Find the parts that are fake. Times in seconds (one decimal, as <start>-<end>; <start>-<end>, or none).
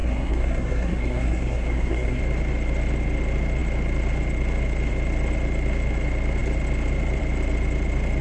0.0-2.2